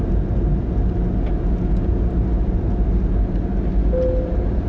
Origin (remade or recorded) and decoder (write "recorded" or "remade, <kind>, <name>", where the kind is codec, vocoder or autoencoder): recorded